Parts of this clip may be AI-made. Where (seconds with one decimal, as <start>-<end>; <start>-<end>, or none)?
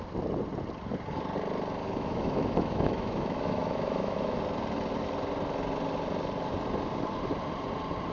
1.8-4.4